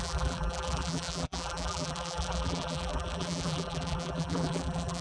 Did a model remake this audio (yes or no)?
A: yes